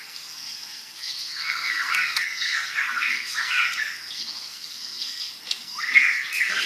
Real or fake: fake